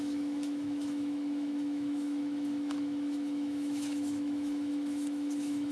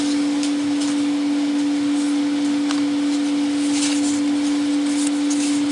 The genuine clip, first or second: second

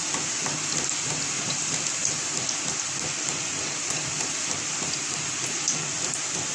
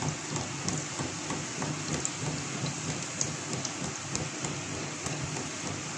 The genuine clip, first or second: second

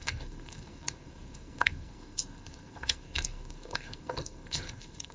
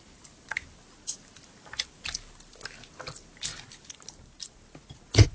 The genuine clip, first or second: second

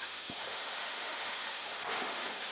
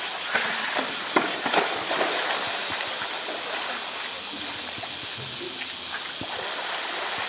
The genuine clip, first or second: second